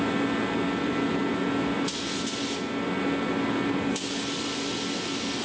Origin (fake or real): real